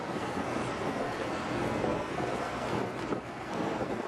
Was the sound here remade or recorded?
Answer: remade